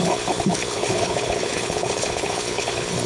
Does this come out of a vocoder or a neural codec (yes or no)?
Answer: yes